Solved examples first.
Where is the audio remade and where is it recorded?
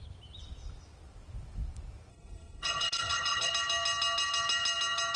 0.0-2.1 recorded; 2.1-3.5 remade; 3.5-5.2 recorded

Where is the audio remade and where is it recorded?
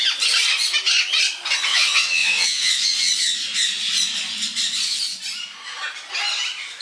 0.0-1.7 recorded; 1.7-3.1 remade; 3.1-6.8 recorded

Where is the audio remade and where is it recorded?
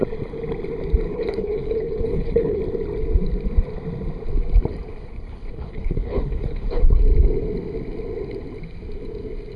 0.0-1.1 recorded; 1.1-2.6 remade; 2.6-4.9 recorded; 4.9-7.0 remade; 7.0-9.6 recorded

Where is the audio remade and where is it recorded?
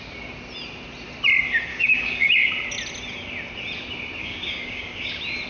0.0-1.7 recorded; 1.7-2.3 remade; 2.3-4.2 recorded; 4.2-5.1 remade; 5.1-5.5 recorded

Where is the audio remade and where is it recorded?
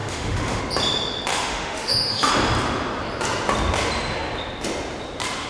0.0-0.6 remade; 0.6-1.3 recorded; 1.3-2.3 remade; 2.3-5.5 recorded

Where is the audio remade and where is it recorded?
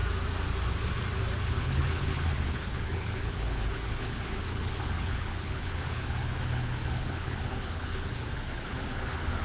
0.0-1.5 recorded; 1.5-9.4 remade